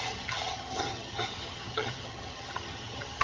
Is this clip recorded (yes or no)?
no